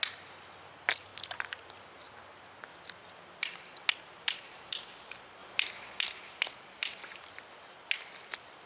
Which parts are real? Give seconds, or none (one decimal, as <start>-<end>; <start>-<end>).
0.0-8.7

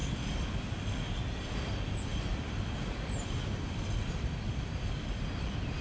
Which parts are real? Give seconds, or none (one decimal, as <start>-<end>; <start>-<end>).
1.2-2.1; 5.0-5.8